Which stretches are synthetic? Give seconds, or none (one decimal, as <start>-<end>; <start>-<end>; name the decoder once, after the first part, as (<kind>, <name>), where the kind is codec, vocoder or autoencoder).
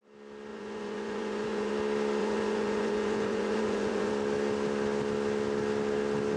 0.5-1.7 (vocoder, Vocos); 2.2-4.1